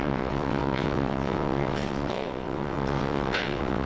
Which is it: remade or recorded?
remade